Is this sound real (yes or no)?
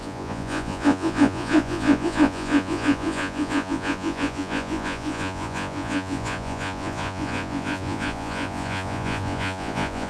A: no